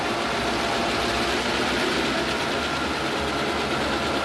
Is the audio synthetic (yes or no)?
no